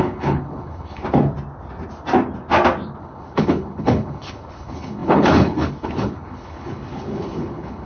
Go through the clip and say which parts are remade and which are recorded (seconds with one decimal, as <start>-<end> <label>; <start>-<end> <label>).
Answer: 0.0-1.0 remade; 1.0-3.0 recorded; 3.0-7.9 remade